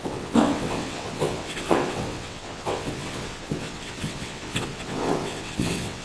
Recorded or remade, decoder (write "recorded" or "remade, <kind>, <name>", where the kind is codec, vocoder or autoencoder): remade, vocoder, WaveNeXt